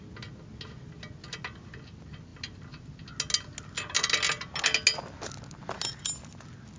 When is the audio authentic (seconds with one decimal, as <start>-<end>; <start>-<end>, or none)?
0.0-6.8